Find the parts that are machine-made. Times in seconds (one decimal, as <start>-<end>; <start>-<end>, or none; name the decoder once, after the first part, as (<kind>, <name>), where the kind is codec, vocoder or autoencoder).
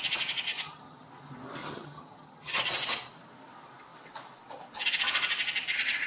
0.5-1.1 (vocoder, HiFi-GAN); 1.6-2.6